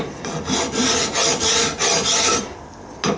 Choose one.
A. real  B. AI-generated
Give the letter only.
A